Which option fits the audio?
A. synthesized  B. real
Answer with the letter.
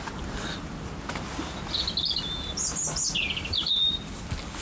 B